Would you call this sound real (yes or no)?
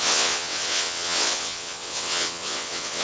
no